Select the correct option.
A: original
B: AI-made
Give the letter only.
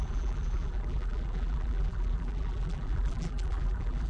B